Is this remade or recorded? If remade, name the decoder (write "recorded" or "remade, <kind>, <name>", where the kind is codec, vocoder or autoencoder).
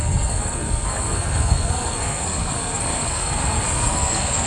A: remade, codec, SNAC